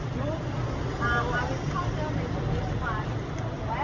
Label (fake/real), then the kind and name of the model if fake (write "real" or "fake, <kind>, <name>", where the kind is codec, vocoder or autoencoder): real